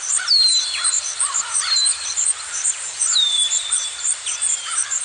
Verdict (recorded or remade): remade